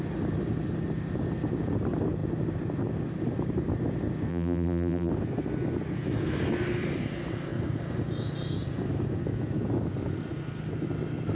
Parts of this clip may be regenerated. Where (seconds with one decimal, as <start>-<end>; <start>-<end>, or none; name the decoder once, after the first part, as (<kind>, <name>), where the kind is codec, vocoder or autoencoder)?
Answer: 4.3-5.1 (vocoder, BigVGAN v2)

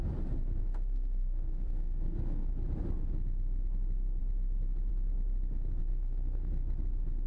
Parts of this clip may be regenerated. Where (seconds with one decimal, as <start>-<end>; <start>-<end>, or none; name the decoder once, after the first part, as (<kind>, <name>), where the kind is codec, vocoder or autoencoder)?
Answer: 0.6-2.5 (codec, SNAC); 5.8-6.5

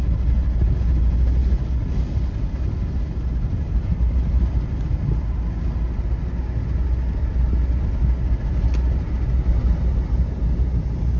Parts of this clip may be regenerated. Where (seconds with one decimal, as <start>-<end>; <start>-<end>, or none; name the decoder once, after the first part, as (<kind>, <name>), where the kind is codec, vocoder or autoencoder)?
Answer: none

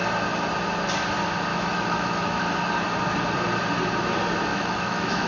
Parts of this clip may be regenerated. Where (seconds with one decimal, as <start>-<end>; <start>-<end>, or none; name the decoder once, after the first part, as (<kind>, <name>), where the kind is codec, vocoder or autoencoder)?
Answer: 1.5-2.4 (autoencoder, DAC-VAE); 4.5-5.3

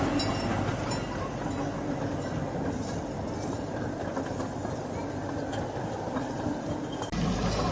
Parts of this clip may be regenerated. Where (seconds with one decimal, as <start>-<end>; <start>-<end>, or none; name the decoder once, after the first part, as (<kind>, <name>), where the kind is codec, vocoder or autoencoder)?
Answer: none

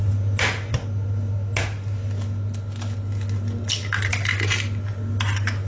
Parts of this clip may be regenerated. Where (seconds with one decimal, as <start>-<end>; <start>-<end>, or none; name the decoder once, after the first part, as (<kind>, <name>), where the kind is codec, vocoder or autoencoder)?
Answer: none

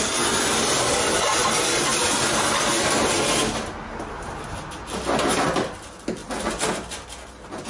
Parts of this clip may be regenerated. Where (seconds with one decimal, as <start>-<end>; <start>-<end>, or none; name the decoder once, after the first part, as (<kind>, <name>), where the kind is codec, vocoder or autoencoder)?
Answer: none